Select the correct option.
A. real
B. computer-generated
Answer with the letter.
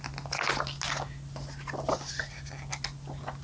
A